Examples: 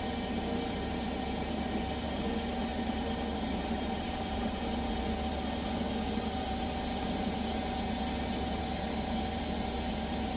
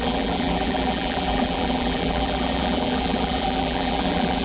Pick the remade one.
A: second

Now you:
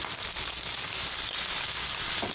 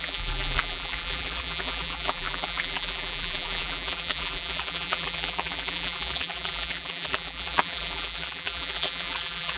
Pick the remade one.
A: second